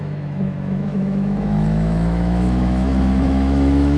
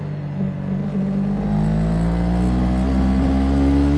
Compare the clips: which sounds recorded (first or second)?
second